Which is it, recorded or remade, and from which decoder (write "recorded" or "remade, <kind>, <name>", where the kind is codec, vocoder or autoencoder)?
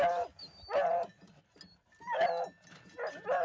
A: recorded